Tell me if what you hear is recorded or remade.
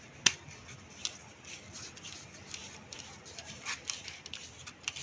recorded